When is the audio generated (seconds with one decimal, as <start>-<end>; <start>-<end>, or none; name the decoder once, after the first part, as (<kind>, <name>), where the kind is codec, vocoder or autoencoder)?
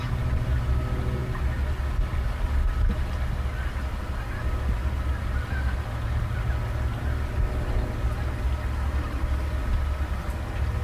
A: none